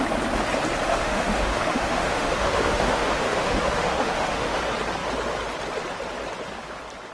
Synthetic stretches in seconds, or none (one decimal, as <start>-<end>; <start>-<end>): 0.9-4.6

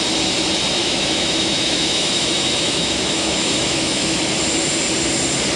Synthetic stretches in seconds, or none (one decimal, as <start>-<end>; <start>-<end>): 0.8-4.2

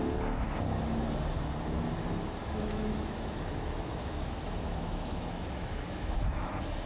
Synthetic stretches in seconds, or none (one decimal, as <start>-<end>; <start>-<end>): 2.4-6.5